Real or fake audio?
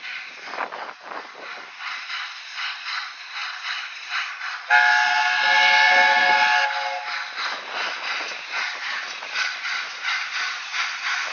real